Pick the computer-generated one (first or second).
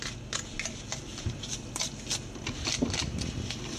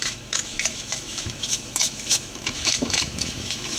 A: second